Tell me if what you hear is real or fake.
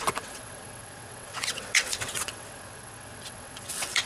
fake